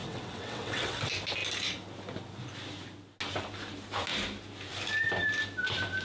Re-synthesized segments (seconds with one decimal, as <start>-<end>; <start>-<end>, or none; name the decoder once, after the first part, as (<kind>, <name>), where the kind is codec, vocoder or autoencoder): 0.0-1.0 (vocoder, WaveNeXt)